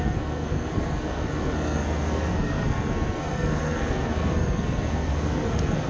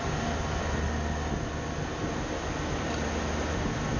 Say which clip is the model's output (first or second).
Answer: first